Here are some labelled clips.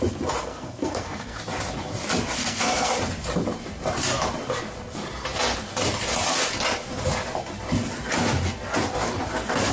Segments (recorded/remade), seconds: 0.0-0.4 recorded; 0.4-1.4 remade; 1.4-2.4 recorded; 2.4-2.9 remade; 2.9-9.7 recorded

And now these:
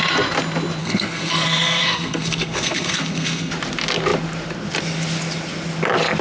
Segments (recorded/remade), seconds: 0.0-0.8 recorded; 0.8-3.5 remade; 3.5-6.2 recorded

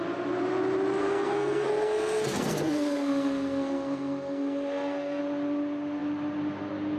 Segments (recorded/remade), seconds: 0.0-1.0 recorded; 1.0-5.2 remade; 5.2-7.0 recorded

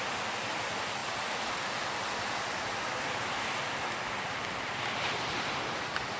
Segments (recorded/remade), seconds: 0.0-6.2 recorded

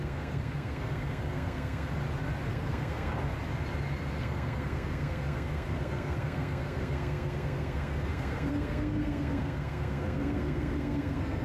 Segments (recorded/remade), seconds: 0.0-1.9 remade; 1.9-2.5 recorded; 2.5-3.1 remade; 3.1-4.2 recorded; 4.2-11.4 remade

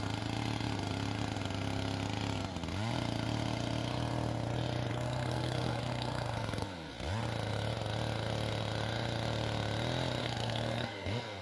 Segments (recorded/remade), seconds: 0.0-4.9 recorded; 4.9-6.9 remade; 6.9-10.2 recorded; 10.2-11.4 remade

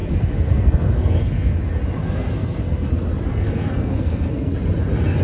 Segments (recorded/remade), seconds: 0.0-1.6 remade; 1.6-2.0 recorded; 2.0-2.9 remade; 2.9-3.3 recorded; 3.3-4.5 remade; 4.5-5.2 recorded

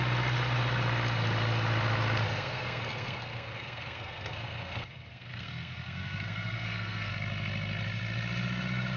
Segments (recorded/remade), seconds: 0.0-2.3 recorded; 2.3-7.1 remade; 7.1-9.0 recorded